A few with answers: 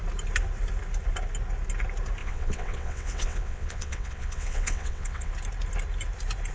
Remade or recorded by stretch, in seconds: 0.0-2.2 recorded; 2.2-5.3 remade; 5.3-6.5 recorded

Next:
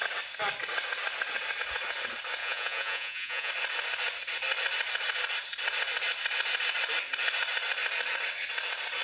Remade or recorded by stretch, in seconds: 0.0-2.4 recorded; 2.4-3.5 remade; 3.5-9.0 recorded